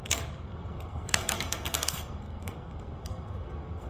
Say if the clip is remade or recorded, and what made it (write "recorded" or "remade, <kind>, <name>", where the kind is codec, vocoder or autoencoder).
remade, codec, SNAC